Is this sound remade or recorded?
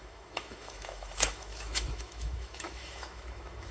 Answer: remade